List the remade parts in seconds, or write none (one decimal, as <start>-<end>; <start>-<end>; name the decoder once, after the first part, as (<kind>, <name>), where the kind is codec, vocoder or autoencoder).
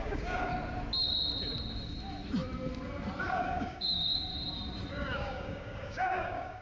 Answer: 0.0-0.5 (codec, DAC); 3.2-4.3; 4.9-6.6